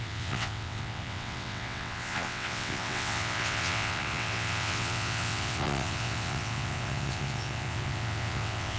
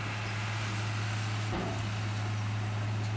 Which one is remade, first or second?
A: first